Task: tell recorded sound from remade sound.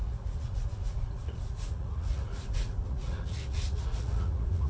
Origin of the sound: remade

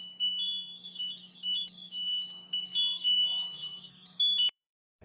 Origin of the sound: remade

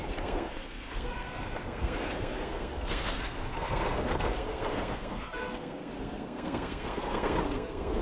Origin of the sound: remade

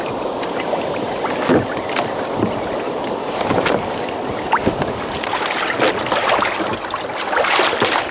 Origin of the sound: recorded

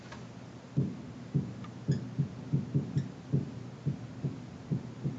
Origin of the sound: recorded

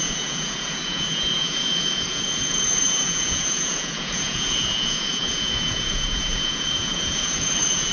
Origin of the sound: remade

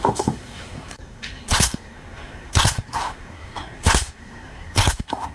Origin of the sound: remade